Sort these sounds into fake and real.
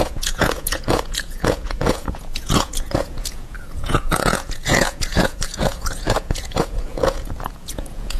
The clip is fake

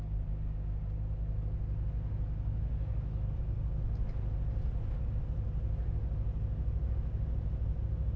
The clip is real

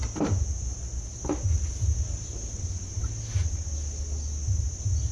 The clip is real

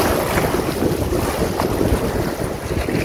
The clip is real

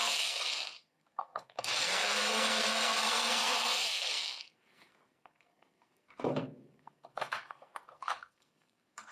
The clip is fake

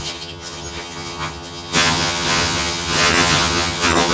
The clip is fake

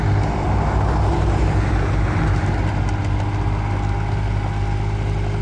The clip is real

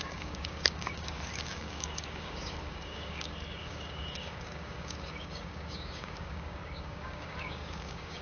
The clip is fake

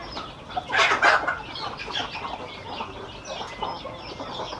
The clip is real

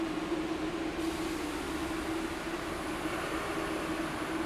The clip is real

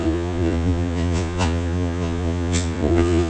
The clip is fake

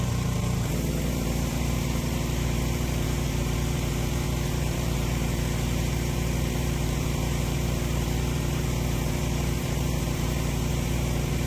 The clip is fake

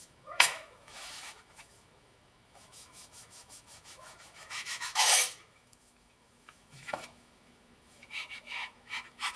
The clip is fake